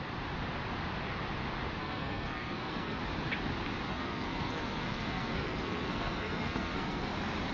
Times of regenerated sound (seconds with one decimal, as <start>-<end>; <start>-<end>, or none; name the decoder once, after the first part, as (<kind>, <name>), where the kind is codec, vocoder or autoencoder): 1.8-3.0 (codec, SNAC); 3.9-7.1